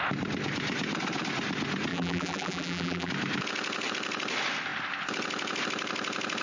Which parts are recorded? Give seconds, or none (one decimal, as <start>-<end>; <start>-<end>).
0.0-1.9; 3.1-6.4